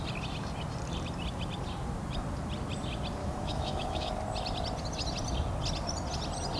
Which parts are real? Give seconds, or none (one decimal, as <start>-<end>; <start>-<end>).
0.0-3.2; 4.1-6.6